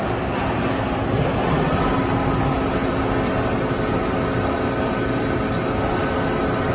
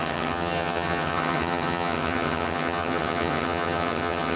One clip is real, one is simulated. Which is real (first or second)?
first